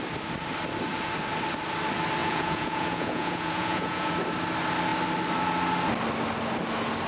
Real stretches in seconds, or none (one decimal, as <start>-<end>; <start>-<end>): 0.0-2.2; 4.1-7.1